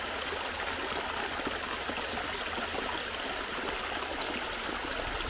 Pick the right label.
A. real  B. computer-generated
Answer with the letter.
A